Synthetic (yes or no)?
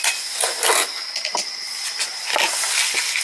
no